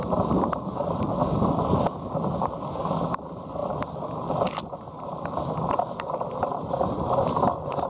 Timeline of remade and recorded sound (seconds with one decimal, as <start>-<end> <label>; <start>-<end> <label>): 0.0-7.9 recorded